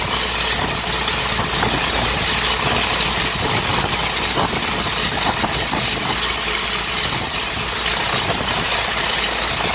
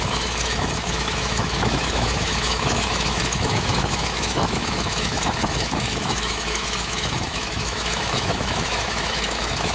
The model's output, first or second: second